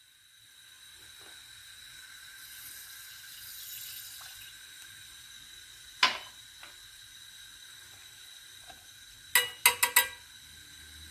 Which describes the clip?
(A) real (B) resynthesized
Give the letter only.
A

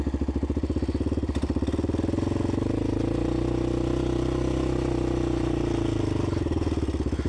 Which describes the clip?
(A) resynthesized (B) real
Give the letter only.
B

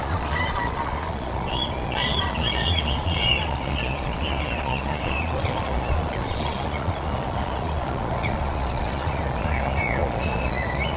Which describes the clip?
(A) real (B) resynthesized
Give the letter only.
B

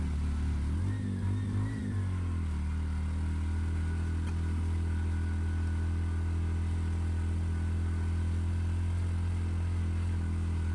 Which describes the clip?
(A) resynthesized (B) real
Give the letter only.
B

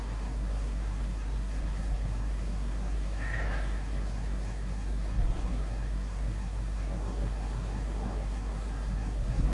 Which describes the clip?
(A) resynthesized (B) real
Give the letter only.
A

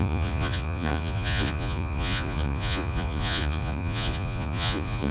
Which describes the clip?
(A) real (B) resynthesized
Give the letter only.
B